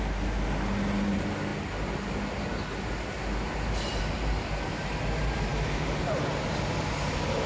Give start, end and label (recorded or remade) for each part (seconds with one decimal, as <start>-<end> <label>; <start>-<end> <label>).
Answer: 0.0-7.5 recorded